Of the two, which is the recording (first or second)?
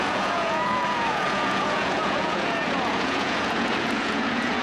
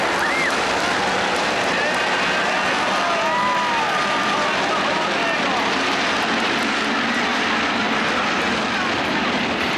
second